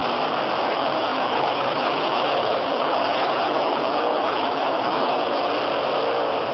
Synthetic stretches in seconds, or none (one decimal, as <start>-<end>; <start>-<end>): 0.7-5.5